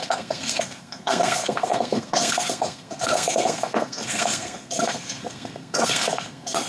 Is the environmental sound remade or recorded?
remade